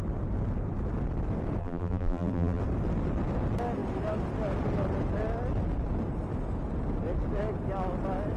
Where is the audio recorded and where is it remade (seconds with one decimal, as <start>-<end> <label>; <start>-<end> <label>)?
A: 0.0-1.6 recorded; 1.6-2.6 remade; 2.6-8.4 recorded